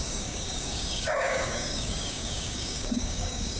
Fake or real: fake